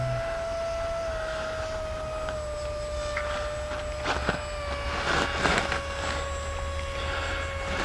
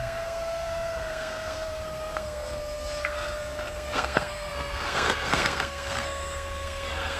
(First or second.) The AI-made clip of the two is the second